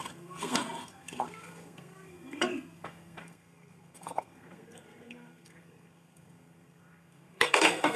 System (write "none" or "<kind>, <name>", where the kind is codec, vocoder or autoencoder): codec, SNAC